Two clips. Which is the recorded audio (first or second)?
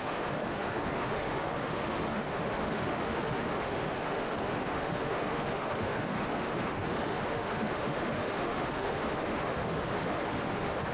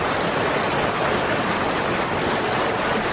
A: second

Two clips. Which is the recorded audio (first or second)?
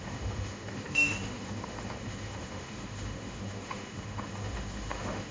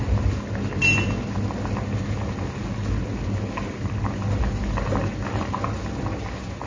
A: second